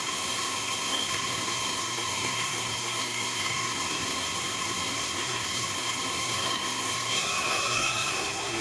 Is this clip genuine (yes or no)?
no